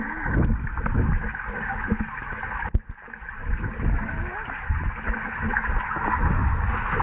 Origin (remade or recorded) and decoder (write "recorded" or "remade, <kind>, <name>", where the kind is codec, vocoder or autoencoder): recorded